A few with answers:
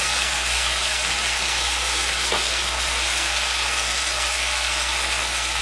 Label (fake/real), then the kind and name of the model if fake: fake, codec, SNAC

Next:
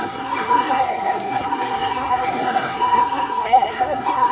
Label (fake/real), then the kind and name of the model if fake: fake, codec, SNAC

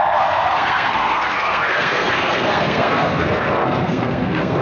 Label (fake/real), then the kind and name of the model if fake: fake, codec, SNAC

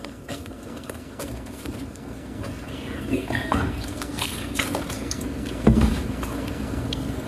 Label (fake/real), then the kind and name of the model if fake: fake, codec, SNAC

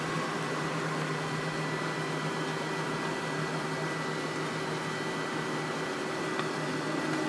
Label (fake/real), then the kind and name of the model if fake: real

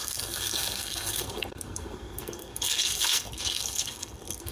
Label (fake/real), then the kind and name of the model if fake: fake, codec, SNAC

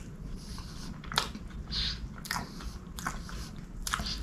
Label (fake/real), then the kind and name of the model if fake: real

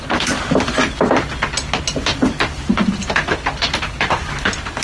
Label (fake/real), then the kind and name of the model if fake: real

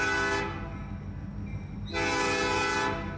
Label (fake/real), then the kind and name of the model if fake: real